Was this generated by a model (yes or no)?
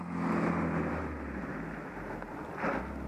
no